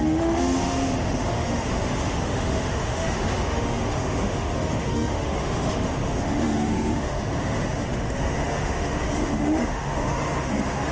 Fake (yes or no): yes